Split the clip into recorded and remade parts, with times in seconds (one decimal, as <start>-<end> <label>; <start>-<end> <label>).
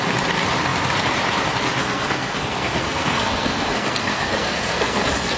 0.0-1.8 recorded; 1.8-5.0 remade; 5.0-5.4 recorded